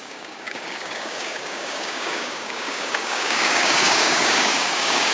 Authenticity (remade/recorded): remade